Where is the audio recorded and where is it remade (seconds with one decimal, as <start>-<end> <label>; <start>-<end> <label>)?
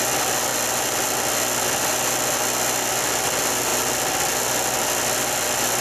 0.0-5.8 recorded